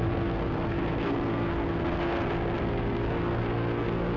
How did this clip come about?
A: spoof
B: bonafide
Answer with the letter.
A